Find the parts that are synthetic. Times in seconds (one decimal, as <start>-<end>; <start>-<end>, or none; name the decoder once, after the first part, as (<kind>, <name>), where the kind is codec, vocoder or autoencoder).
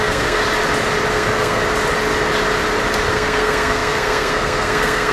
0.0-0.4 (codec, SNAC); 1.1-1.6; 3.1-5.1